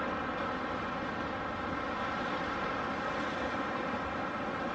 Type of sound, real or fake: real